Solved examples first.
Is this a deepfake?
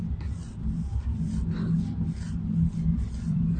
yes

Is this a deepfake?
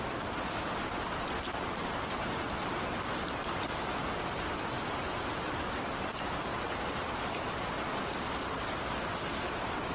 no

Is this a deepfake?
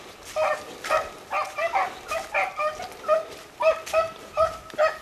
no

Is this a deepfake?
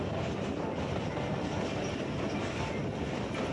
no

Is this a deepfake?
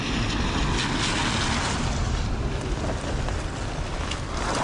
no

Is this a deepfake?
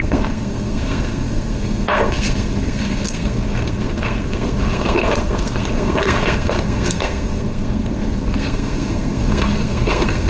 yes